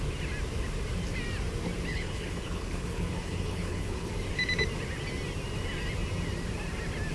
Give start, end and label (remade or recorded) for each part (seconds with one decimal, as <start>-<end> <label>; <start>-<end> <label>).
0.0-1.9 recorded; 1.9-4.1 remade; 4.1-7.1 recorded